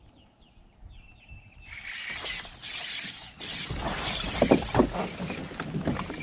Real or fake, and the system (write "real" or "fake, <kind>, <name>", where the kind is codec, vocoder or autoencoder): real